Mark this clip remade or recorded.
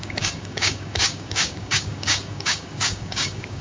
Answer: remade